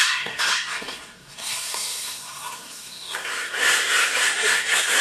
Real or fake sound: fake